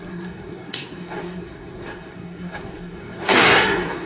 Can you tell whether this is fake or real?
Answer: fake